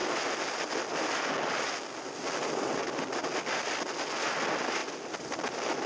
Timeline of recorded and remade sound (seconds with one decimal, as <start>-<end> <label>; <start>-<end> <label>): 0.0-5.9 recorded